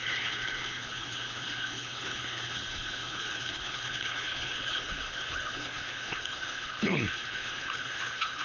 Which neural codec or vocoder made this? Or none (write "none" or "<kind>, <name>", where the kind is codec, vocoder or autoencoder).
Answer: codec, HILCodec